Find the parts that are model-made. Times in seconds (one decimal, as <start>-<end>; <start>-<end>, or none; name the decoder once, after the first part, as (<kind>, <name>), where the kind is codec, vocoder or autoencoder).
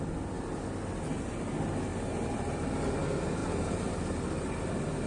1.9-2.9 (vocoder, BigVGAN v2); 3.4-5.1